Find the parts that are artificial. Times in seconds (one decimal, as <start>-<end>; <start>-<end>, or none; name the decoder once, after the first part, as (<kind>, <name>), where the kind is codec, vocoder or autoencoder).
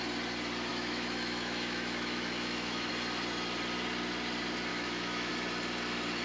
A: 0.7-2.9 (autoencoder, DAC-VAE); 4.7-5.3